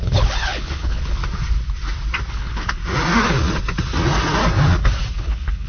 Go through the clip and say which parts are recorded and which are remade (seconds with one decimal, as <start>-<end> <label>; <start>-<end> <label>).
0.0-1.2 remade; 1.2-2.3 recorded; 2.3-2.8 remade; 2.8-5.1 recorded; 5.1-5.7 remade